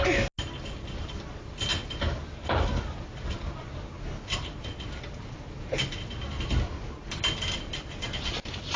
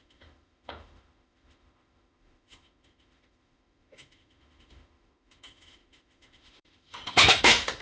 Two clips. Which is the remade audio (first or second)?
second